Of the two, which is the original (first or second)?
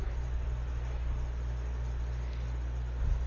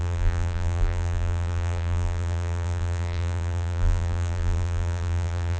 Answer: first